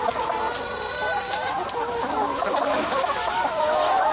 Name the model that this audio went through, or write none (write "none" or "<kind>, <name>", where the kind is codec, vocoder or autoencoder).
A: none